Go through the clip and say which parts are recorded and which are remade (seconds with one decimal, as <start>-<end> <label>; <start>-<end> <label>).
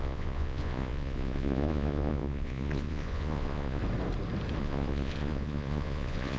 0.0-3.8 remade; 3.8-4.6 recorded; 4.6-6.4 remade